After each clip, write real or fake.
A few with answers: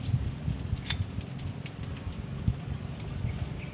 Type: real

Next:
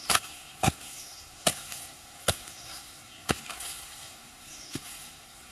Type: fake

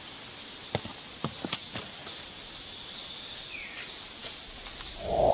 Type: real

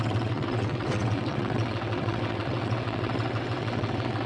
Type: fake